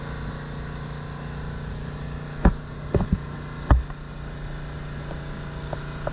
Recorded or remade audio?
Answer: recorded